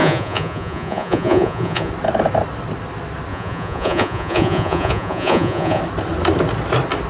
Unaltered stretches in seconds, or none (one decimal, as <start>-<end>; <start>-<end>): 1.9-3.3; 5.8-7.1